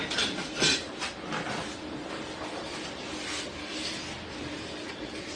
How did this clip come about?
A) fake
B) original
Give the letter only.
B